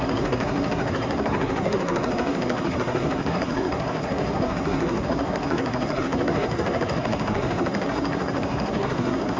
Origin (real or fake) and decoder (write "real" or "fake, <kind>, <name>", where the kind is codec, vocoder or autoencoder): fake, codec, SNAC